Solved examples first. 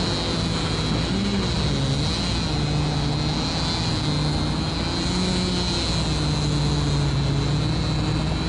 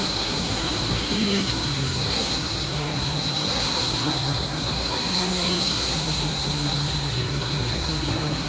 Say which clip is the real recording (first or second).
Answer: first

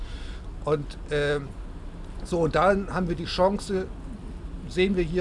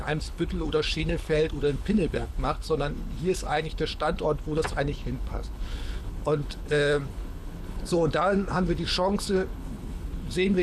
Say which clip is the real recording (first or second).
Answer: first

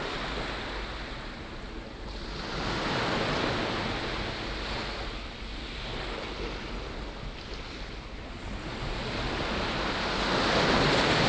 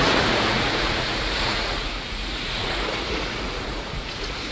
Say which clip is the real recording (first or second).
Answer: first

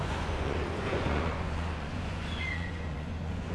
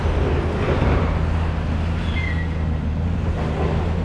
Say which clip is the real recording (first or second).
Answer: second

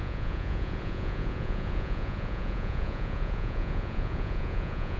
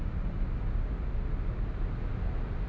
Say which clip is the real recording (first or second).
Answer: second